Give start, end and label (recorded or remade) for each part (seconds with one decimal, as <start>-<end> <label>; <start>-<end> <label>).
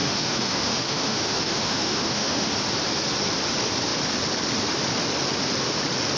0.0-2.5 remade; 2.5-6.2 recorded